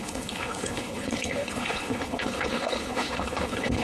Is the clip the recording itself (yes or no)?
no